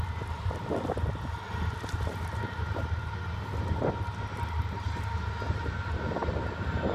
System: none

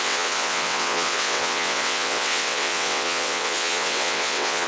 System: vocoder, WaveNeXt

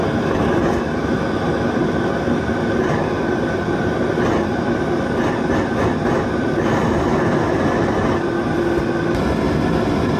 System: none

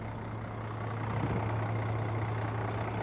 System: none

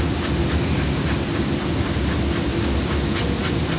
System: none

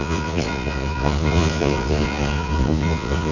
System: vocoder, Vocos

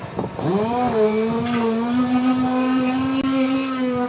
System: none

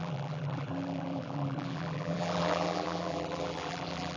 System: vocoder, BigVGAN v2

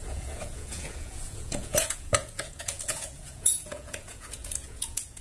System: vocoder, Vocos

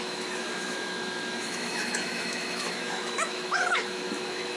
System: autoencoder, DAC-VAE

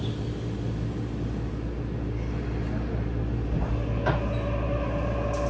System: none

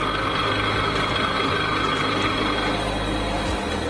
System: none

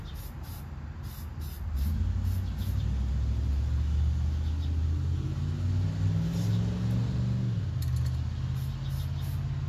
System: none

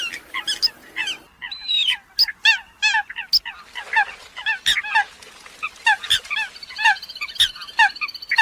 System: none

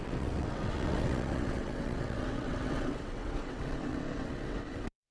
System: vocoder, WaveNeXt